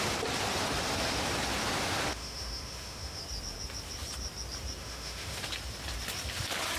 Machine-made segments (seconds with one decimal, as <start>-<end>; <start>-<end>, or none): 2.1-3.2; 4.8-5.4